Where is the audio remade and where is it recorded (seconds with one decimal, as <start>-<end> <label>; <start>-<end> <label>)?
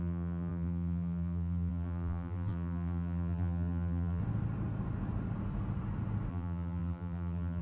0.0-4.2 remade; 4.2-6.3 recorded; 6.3-7.6 remade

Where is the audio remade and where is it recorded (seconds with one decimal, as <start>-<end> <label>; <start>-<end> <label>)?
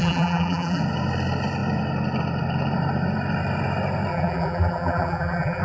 0.0-0.8 remade; 0.8-4.1 recorded; 4.1-5.6 remade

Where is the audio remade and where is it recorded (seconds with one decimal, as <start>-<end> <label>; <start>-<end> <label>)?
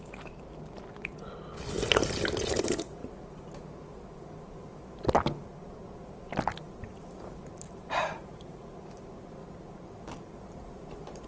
0.0-0.5 remade; 0.5-1.7 recorded; 1.7-3.0 remade; 3.0-7.3 recorded; 7.3-9.4 remade; 9.4-10.2 recorded; 10.2-11.3 remade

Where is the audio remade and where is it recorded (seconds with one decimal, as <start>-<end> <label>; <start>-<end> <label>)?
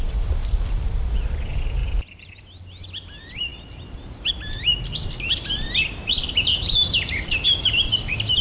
0.0-8.4 remade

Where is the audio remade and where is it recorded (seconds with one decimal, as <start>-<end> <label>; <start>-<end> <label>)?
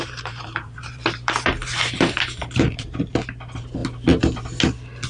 0.0-3.1 remade; 3.1-5.1 recorded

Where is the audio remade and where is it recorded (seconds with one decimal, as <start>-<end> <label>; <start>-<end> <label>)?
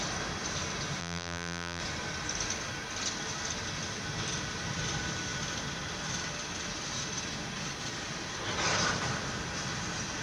0.0-1.0 recorded; 1.0-1.8 remade; 1.8-10.2 recorded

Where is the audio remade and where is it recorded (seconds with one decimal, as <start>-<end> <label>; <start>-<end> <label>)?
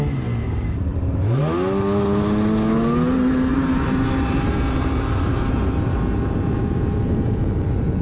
0.0-0.9 recorded; 0.9-1.4 remade; 1.4-3.5 recorded; 3.5-7.4 remade; 7.4-8.0 recorded